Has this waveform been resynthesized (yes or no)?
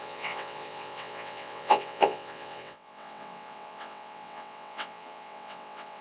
yes